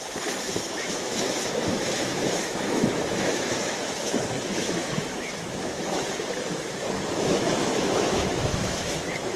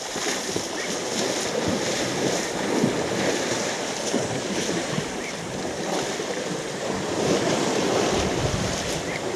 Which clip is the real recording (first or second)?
second